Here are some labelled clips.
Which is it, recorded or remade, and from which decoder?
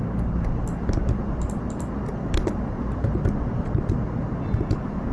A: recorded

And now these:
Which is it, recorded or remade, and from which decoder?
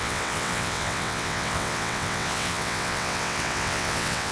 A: remade, vocoder, WaveNeXt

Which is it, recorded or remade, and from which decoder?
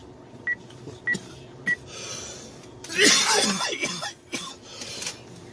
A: recorded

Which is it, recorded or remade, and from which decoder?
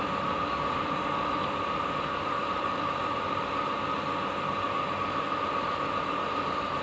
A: recorded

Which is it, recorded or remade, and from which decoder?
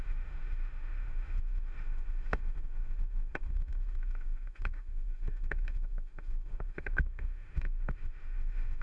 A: remade, autoencoder, DAC-VAE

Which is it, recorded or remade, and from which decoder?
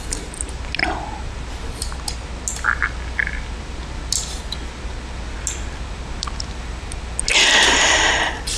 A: recorded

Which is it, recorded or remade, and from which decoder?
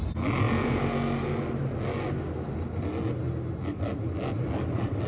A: recorded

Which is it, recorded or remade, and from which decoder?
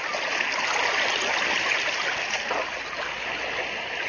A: recorded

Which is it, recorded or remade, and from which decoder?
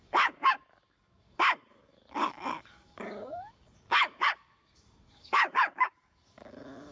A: remade, codec, DAC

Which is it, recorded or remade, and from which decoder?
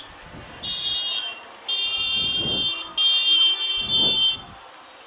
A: recorded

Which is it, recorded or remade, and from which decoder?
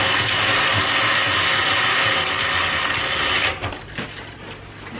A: recorded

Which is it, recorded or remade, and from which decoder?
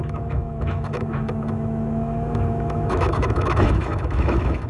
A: remade, autoencoder, DAC-VAE